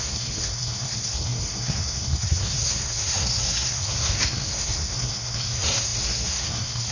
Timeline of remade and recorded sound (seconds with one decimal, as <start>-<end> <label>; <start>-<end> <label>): 0.0-6.9 remade